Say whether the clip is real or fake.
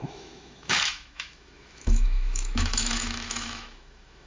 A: fake